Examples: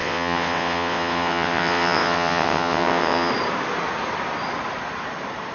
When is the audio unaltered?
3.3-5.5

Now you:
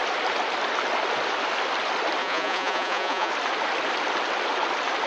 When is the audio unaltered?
0.0-2.2; 3.3-5.1

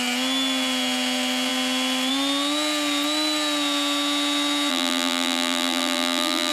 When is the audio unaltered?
0.0-4.7